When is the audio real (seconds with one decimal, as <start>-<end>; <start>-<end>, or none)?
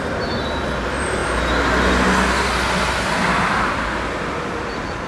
0.0-5.1